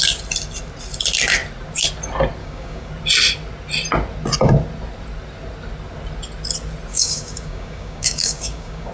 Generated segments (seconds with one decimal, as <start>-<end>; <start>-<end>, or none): 2.4-2.9; 6.9-8.9